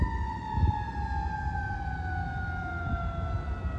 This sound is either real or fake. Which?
real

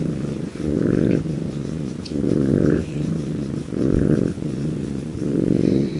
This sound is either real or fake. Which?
fake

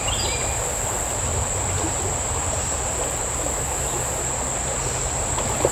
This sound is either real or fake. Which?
real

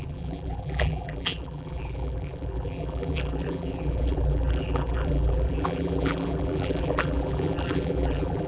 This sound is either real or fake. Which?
fake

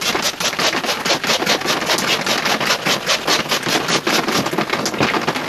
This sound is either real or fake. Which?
real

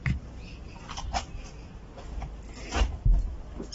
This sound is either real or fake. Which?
real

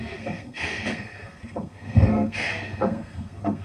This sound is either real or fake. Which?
fake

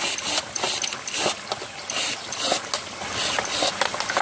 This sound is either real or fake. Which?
real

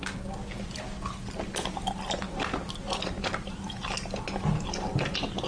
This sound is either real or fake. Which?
real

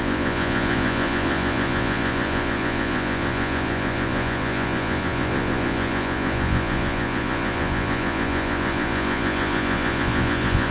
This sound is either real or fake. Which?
fake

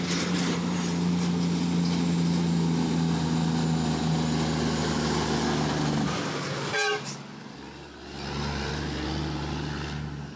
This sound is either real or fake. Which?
real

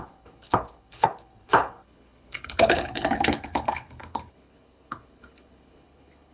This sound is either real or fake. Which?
fake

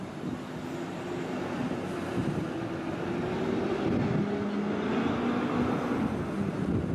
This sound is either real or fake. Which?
real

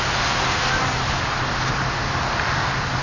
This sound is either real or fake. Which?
real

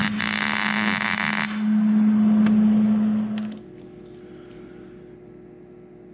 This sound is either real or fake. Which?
real